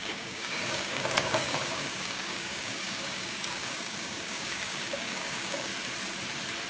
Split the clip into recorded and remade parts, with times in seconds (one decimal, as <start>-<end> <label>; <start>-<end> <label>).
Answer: 0.0-5.7 remade; 5.7-6.7 recorded